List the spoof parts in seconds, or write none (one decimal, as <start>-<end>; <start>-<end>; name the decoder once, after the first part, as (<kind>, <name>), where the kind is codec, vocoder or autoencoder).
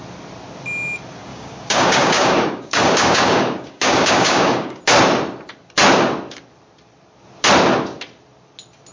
1.3-4.8 (codec, DAC)